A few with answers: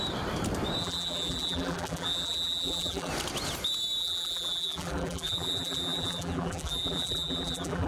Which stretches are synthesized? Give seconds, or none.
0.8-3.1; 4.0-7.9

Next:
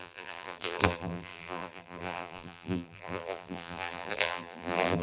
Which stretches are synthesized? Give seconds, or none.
0.0-5.0

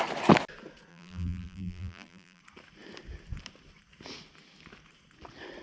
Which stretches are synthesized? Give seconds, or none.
0.9-2.4

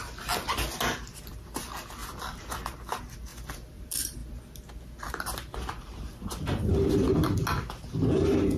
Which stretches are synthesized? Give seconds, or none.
none

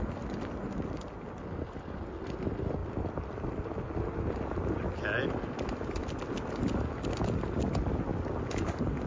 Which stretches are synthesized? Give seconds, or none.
2.8-4.1; 8.1-8.7

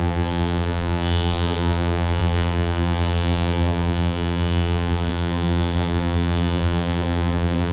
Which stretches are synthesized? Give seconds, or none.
0.0-7.7

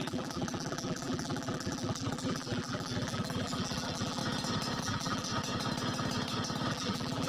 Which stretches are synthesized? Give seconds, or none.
0.0-4.2; 4.8-5.3; 6.7-7.3